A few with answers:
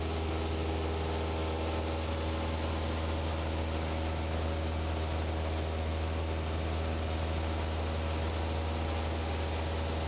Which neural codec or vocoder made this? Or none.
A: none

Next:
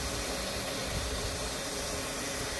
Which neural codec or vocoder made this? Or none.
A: none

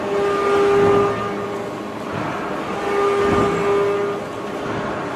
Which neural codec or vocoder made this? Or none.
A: none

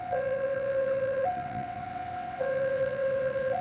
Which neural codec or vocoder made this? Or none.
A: vocoder, WaveNeXt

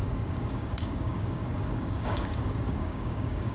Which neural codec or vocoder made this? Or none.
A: codec, DAC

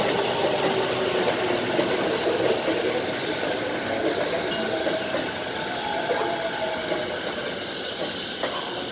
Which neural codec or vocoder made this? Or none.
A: none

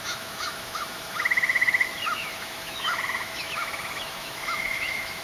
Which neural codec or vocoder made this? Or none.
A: autoencoder, DAC-VAE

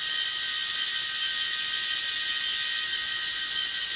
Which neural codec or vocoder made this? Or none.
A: none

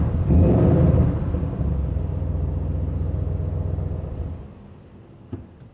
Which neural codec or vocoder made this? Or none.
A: none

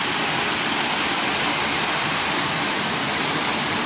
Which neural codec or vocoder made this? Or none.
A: none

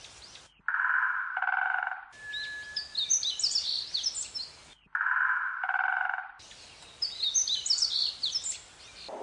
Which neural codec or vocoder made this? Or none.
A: none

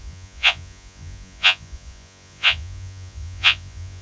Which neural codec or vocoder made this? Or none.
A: vocoder, Vocos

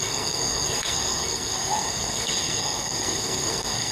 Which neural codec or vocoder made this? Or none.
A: codec, SNAC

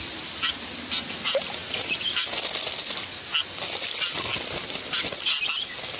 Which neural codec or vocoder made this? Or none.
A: none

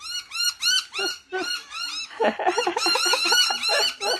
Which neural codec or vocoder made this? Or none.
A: none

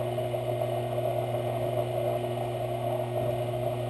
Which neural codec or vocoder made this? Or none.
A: none